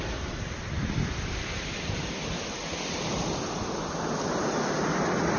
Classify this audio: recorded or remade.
recorded